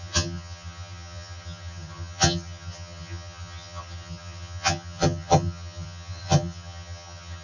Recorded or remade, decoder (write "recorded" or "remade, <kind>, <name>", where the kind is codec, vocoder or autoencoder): remade, vocoder, HiFi-GAN